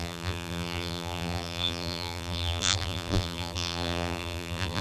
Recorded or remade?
remade